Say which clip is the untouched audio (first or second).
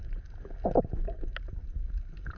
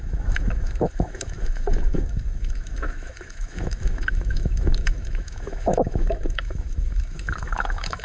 first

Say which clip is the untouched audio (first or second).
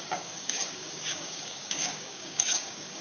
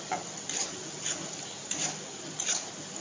second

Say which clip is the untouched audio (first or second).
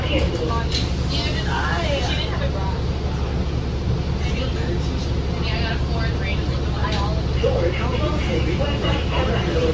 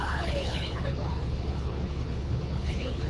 first